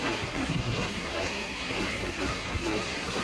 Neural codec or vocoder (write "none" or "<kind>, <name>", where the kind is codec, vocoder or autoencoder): codec, SNAC